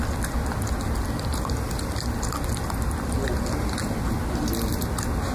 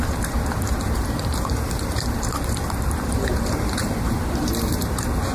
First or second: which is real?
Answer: first